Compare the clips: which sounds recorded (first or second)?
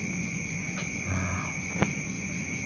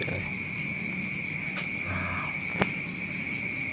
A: second